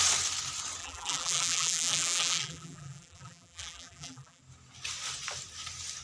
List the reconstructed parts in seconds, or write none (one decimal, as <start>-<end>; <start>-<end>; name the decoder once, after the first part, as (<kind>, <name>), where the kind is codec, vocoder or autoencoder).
0.8-4.4 (vocoder, BigVGAN v2)